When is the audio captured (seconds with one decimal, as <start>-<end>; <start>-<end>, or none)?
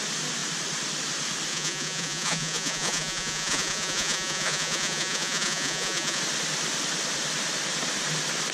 0.0-1.5; 6.2-8.5